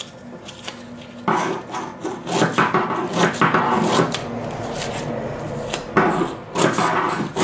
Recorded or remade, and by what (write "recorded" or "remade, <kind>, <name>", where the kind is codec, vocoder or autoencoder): recorded